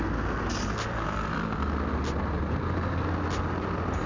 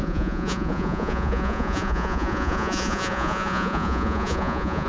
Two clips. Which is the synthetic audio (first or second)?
second